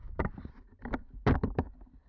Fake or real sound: real